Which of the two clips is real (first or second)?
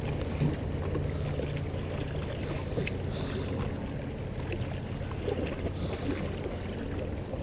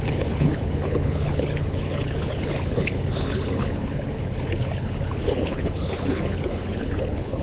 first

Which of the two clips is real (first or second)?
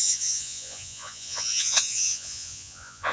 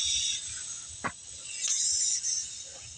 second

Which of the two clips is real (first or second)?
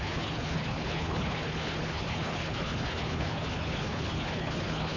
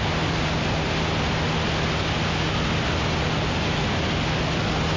second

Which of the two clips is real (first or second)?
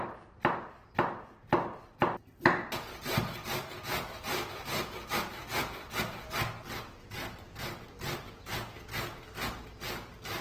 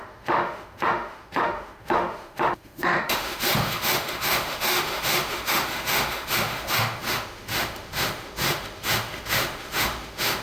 first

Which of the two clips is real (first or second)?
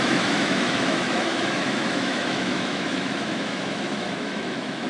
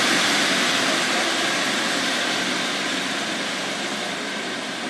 second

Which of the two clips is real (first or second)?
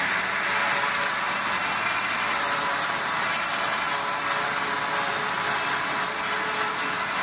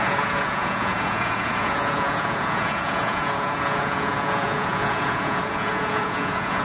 first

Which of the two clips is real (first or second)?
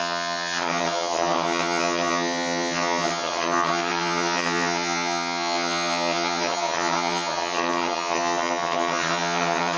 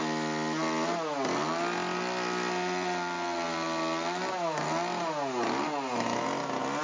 second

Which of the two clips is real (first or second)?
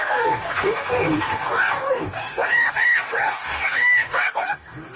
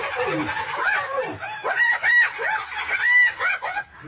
second